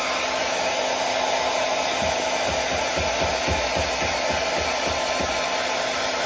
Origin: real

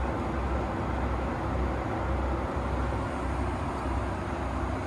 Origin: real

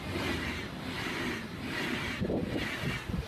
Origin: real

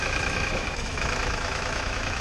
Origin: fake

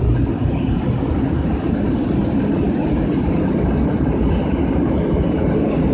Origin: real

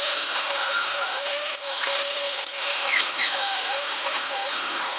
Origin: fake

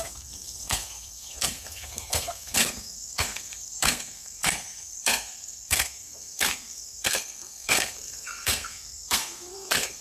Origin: fake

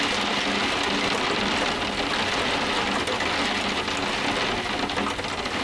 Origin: real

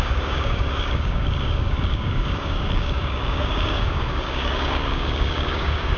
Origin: fake